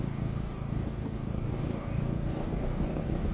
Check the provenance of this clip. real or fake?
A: fake